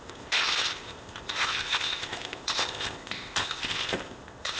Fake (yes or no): yes